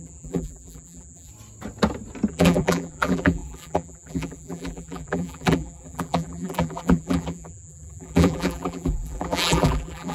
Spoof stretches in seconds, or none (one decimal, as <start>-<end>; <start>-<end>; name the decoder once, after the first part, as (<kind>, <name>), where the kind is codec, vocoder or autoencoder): 0.0-1.3 (vocoder, BigVGAN v2); 2.3-10.1